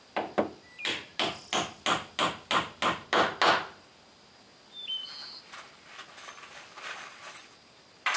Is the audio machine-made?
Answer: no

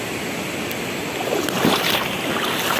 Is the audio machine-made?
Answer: no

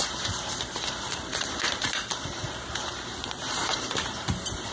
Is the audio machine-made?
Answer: yes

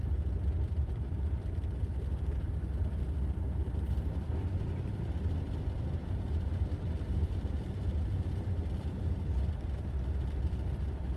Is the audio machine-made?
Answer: yes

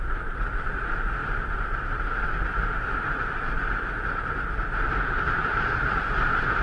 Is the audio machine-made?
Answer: yes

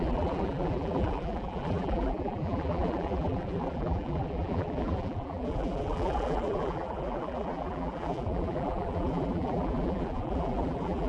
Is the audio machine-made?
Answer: yes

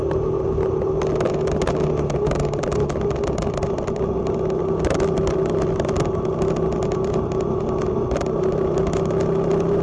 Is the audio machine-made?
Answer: no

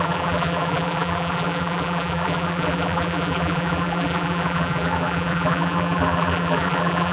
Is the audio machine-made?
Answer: yes